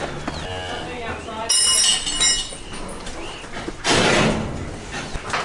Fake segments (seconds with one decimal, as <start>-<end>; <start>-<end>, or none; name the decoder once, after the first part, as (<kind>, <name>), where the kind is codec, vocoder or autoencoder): none